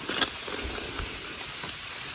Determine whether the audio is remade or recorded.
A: recorded